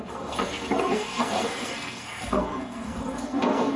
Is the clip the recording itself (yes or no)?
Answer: no